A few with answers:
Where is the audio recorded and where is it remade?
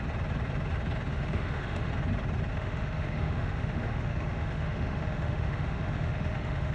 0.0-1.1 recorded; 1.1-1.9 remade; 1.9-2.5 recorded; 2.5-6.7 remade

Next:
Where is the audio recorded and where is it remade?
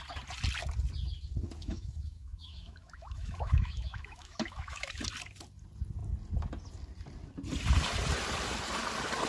0.0-1.6 recorded; 1.6-5.0 remade; 5.0-9.3 recorded